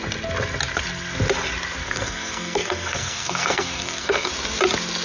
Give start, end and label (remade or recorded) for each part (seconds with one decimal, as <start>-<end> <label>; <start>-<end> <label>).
0.0-1.8 recorded; 1.8-4.3 remade; 4.3-5.0 recorded